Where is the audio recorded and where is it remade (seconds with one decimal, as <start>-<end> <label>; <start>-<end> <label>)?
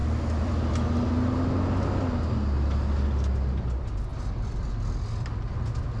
0.0-1.1 remade; 1.1-4.1 recorded; 4.1-4.7 remade; 4.7-6.0 recorded